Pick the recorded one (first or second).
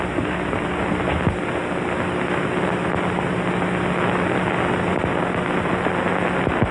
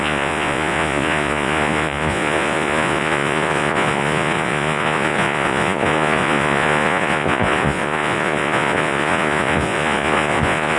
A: first